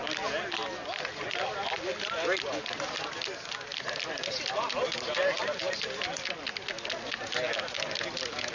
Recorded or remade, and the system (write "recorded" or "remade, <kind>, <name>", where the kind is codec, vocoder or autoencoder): recorded